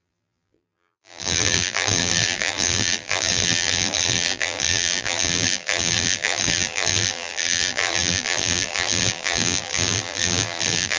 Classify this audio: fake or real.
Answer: fake